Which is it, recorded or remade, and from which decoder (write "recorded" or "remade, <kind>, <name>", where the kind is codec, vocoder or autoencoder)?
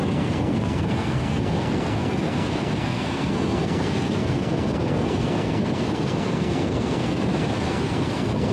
remade, codec, SNAC